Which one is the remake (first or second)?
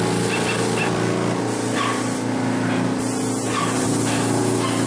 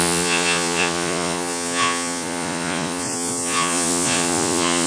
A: second